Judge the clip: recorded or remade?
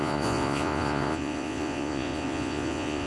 remade